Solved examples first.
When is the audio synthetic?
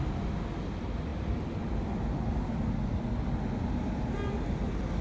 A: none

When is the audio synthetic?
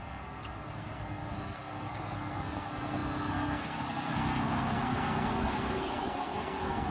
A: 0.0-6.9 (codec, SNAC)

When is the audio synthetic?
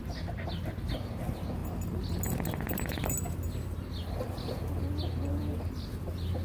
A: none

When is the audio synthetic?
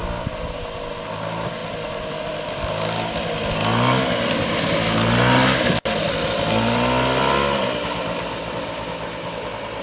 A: none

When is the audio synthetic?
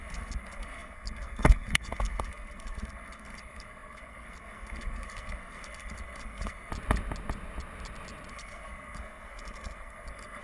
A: 0.0-6.7 (codec, SNAC); 8.3-10.4